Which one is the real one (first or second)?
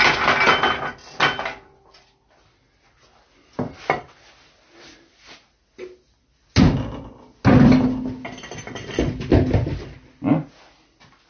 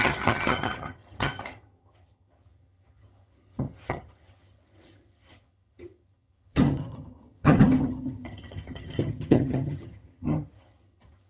first